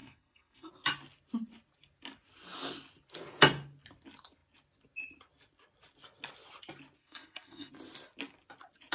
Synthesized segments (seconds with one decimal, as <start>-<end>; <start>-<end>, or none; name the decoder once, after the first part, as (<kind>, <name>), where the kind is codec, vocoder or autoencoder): 0.0-0.7 (codec, SNAC); 7.0-7.7